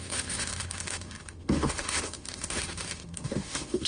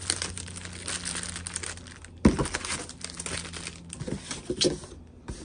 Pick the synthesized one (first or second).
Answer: first